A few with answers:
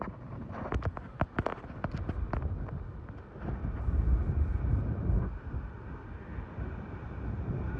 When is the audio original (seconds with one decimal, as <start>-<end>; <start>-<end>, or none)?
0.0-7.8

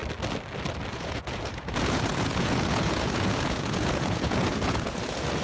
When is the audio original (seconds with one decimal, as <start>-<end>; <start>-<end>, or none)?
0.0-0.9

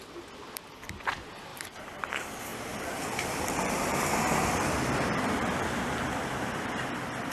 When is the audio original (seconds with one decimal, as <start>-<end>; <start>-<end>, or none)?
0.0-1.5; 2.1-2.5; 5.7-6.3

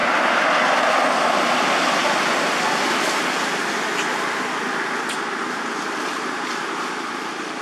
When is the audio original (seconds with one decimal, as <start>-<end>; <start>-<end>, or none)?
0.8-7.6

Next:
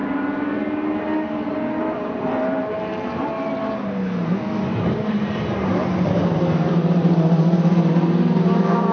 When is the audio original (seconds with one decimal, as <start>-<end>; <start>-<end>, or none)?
0.0-1.8; 3.3-5.1

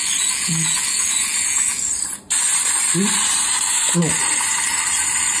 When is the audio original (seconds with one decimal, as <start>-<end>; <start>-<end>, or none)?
0.0-5.4

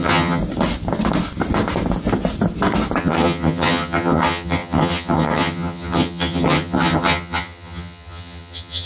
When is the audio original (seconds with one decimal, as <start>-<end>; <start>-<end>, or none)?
0.4-3.0

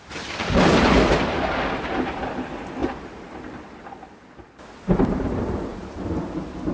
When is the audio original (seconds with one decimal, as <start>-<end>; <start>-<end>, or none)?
0.0-6.7